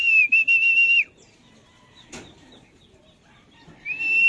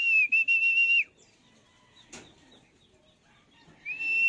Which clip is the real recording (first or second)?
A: second